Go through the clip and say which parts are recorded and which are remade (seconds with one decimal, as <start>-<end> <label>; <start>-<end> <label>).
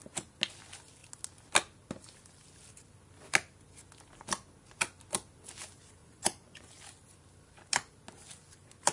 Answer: 0.0-6.0 recorded; 6.0-6.7 remade; 6.7-8.9 recorded